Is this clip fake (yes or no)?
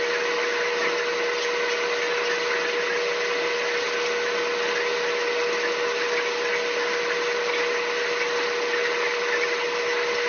no